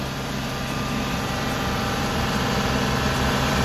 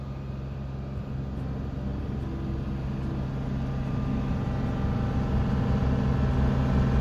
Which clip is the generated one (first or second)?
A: first